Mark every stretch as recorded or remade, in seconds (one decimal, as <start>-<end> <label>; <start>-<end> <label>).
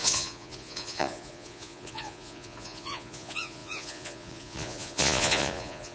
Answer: 0.0-5.9 remade